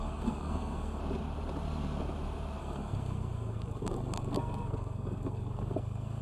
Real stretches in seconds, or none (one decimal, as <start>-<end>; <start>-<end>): 1.0-2.6